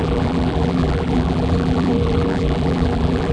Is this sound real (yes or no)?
no